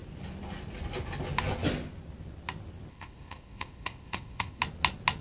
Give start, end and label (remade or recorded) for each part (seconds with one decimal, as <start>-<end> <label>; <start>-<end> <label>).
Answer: 0.0-2.9 recorded; 2.9-4.6 remade; 4.6-5.2 recorded

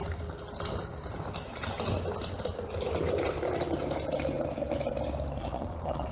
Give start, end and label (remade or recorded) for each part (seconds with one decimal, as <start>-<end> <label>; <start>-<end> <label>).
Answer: 0.0-5.4 recorded; 5.4-6.1 remade